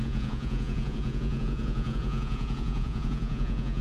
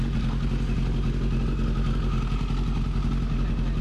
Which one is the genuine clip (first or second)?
second